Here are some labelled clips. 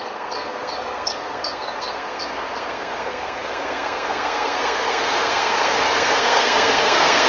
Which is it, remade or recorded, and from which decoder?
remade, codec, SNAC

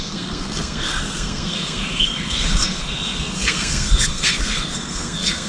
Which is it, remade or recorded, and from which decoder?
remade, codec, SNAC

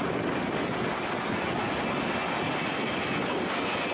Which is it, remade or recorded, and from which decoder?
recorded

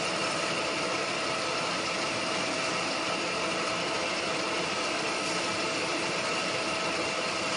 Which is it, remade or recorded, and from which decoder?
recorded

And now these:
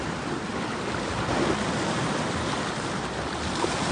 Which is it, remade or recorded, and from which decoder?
recorded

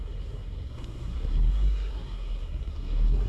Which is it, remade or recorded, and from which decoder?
remade, codec, SNAC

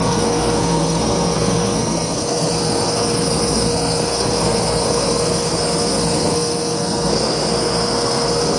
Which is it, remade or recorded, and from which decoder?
remade, codec, SNAC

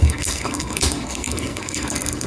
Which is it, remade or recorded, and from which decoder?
remade, codec, SNAC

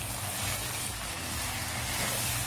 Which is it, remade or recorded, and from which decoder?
recorded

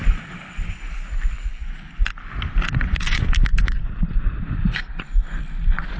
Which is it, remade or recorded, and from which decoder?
recorded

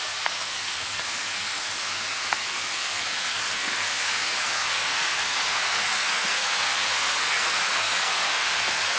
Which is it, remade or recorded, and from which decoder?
remade, codec, SNAC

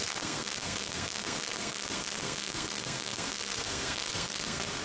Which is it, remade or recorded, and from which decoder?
remade, codec, SNAC